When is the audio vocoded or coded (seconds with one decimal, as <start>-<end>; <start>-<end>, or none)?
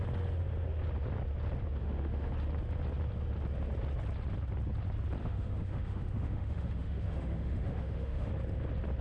1.8-2.3; 5.2-8.3